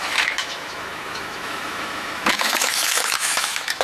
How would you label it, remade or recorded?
remade